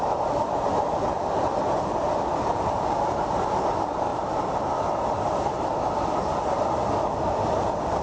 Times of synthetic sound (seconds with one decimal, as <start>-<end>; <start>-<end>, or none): none